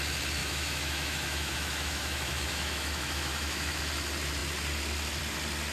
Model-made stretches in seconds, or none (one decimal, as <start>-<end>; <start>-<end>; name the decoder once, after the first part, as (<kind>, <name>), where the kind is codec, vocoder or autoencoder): 0.4-3.8 (autoencoder, DAC-VAE)